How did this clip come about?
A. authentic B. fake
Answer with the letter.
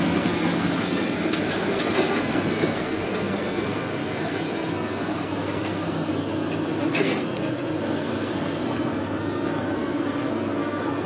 B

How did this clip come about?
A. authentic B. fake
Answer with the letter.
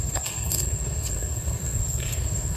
B